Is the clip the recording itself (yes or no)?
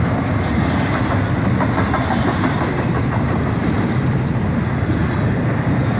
yes